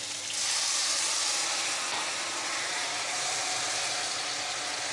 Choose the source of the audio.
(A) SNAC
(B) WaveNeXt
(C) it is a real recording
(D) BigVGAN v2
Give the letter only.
C